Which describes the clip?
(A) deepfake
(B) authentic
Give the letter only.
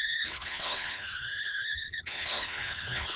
A